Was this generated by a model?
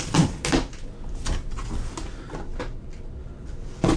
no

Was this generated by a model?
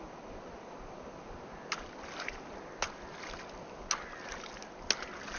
no